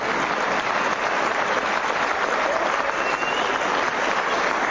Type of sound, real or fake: real